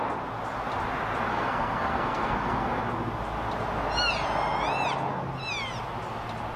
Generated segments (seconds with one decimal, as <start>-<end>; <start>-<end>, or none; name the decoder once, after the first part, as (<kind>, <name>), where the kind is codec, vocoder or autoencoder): 1.3-2.8 (codec, SNAC)